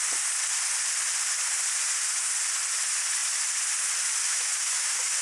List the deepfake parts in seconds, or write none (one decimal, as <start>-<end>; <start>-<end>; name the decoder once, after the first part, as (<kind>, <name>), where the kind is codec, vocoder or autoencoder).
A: 4.2-5.2 (autoencoder, DAC-VAE)